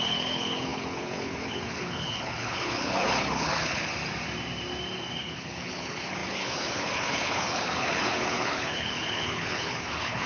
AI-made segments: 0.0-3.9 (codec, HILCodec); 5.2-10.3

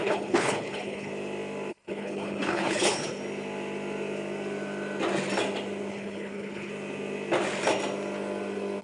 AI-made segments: 0.0-1.1 (codec, HILCodec); 1.7-3.2; 5.9-6.7